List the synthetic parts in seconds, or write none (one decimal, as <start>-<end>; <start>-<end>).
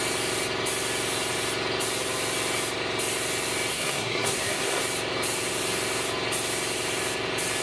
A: 3.7-4.8